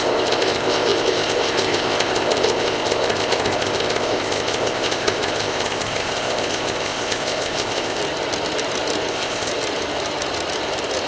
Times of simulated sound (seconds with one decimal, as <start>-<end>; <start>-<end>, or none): 0.0-8.0; 9.1-9.5